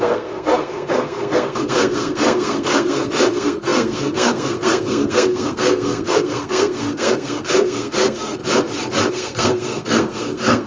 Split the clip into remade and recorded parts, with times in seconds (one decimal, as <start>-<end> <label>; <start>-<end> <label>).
0.0-8.4 remade; 8.4-9.1 recorded; 9.1-10.7 remade